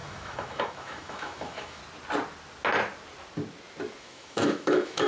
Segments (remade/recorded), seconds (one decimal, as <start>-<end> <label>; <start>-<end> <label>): 0.0-1.8 remade; 1.8-4.0 recorded; 4.0-5.1 remade